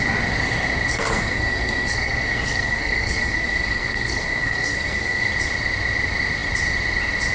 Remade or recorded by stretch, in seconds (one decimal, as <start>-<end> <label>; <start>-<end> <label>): 0.0-0.9 recorded; 0.9-5.3 remade; 5.3-7.3 recorded